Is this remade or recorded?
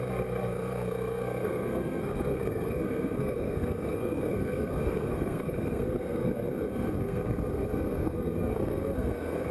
remade